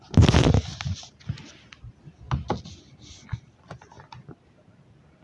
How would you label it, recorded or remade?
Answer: recorded